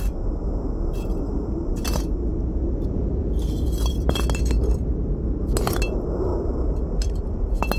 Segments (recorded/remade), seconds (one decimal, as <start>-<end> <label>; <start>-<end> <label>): 0.0-7.8 recorded